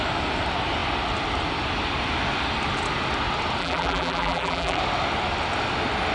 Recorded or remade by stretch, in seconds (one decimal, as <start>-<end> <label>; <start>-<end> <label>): 0.0-3.6 recorded; 3.6-4.8 remade; 4.8-6.1 recorded